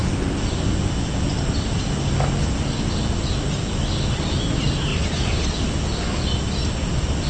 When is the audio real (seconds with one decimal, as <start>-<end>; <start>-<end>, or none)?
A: 0.0-4.9; 5.4-7.3